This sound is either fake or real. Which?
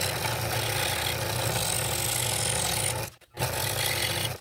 real